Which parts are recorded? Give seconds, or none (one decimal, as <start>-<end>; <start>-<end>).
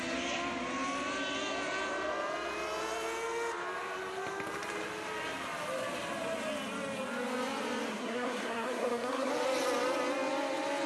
0.0-7.9; 9.3-10.9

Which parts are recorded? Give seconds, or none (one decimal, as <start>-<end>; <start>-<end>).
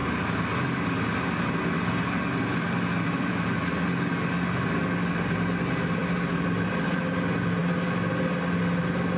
0.0-9.2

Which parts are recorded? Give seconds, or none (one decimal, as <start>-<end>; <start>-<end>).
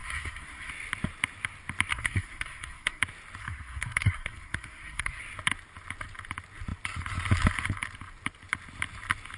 0.7-1.9; 3.0-3.4; 5.2-9.4